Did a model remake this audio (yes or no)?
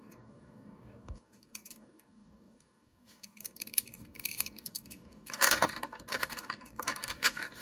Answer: yes